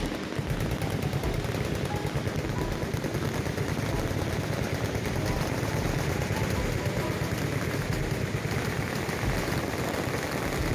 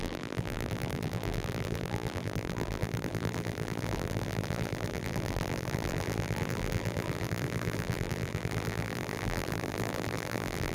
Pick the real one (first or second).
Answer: first